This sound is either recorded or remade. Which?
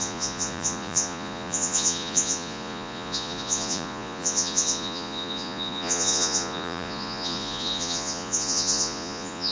remade